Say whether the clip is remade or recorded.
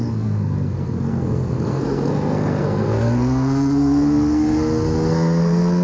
remade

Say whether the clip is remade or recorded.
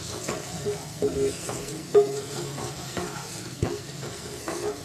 remade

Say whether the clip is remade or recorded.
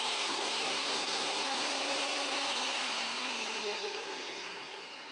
remade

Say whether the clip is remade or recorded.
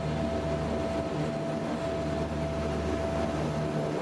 recorded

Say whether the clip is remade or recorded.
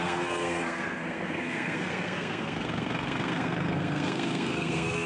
remade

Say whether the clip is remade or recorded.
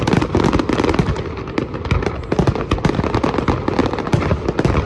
recorded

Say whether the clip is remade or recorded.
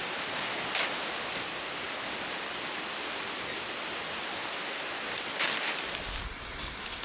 recorded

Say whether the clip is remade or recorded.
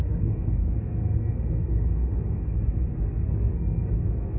remade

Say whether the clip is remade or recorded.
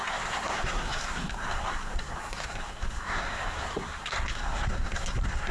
remade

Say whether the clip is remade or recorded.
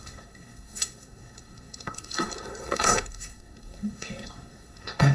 remade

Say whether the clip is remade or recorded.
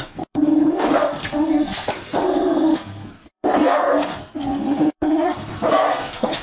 remade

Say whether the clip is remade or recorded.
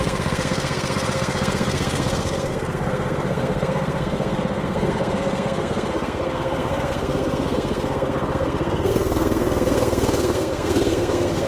remade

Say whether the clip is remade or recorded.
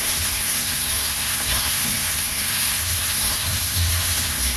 remade